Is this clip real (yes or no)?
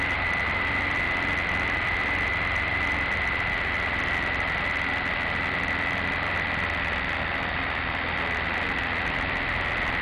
yes